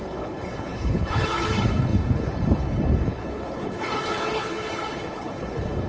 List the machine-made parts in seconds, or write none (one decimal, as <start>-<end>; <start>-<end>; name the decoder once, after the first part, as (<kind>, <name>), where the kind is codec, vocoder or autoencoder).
0.0-5.9 (codec, HILCodec)